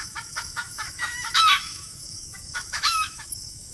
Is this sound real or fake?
fake